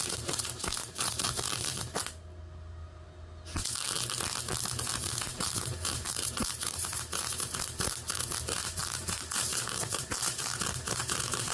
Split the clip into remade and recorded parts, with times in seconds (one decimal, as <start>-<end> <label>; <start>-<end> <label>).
0.0-2.0 remade; 2.0-5.0 recorded; 5.0-11.5 remade